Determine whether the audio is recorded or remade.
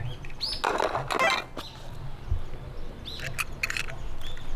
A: recorded